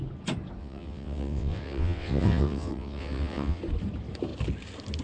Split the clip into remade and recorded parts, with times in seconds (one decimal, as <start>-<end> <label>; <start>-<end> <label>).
0.0-0.6 recorded; 0.6-3.6 remade; 3.6-5.0 recorded